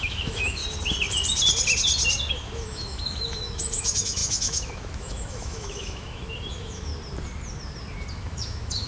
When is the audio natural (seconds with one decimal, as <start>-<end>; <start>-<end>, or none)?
0.6-2.3; 6.9-8.1